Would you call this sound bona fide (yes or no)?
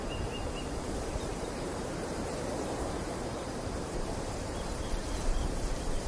no